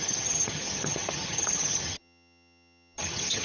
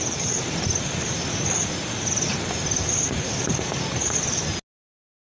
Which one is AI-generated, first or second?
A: first